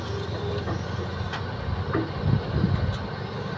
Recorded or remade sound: recorded